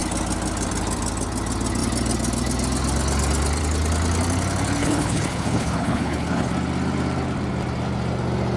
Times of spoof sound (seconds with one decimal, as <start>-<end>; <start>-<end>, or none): 4.8-6.5